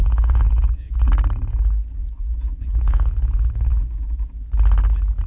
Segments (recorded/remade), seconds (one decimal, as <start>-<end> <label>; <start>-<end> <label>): 0.0-1.1 remade; 1.1-2.0 recorded; 2.0-4.3 remade; 4.3-5.3 recorded